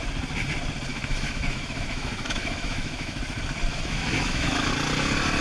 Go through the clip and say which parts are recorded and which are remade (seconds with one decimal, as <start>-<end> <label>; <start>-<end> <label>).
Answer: 0.0-0.9 recorded; 0.9-3.2 remade; 3.2-3.7 recorded; 3.7-4.7 remade; 4.7-5.4 recorded